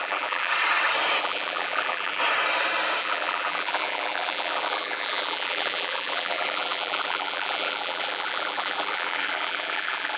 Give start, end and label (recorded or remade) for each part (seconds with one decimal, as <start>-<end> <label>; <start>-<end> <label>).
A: 0.0-0.5 remade; 0.5-1.2 recorded; 1.2-2.2 remade; 2.2-3.0 recorded; 3.0-10.2 remade